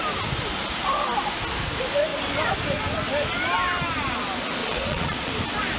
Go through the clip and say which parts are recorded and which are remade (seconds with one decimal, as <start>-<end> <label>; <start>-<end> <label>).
0.0-4.6 recorded; 4.6-5.3 remade; 5.3-5.8 recorded